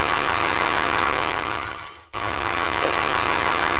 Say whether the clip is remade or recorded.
remade